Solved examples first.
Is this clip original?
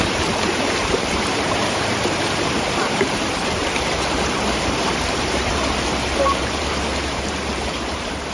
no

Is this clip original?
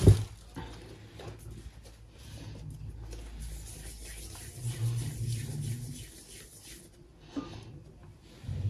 yes